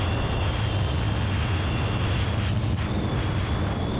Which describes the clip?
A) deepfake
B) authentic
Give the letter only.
B